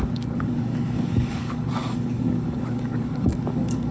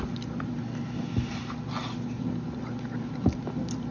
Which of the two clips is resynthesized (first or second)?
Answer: first